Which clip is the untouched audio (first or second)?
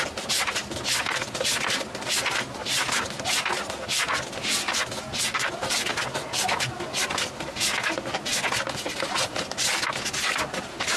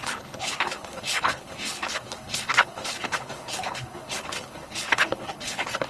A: first